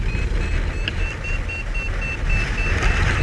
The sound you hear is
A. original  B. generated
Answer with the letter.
A